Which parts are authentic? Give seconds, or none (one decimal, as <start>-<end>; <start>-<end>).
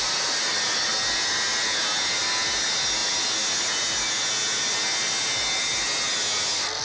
0.0-6.8